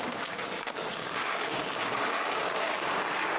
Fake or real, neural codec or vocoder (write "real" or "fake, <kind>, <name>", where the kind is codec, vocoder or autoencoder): fake, codec, DAC